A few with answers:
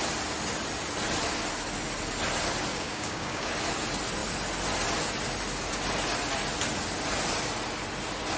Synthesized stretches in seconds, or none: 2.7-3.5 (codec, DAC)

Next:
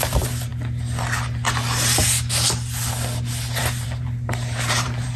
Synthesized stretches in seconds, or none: 0.0-0.5 (vocoder, BigVGAN v2); 3.6-5.2

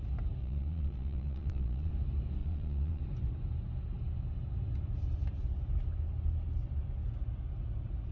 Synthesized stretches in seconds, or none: 0.4-1.9 (vocoder, Vocos); 2.4-3.0

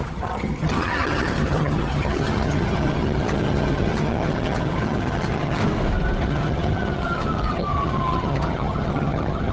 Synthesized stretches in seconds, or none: 0.0-5.6 (vocoder, HiFi-GAN); 6.2-9.5